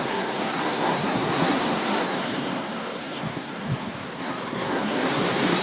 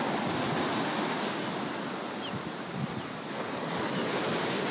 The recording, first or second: second